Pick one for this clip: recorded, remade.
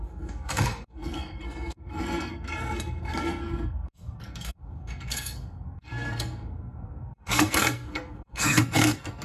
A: remade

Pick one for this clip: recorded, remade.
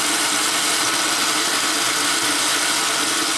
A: recorded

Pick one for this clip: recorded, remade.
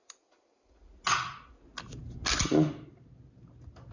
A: recorded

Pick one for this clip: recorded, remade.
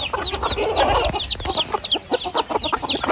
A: recorded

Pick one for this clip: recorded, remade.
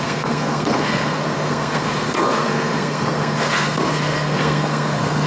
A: remade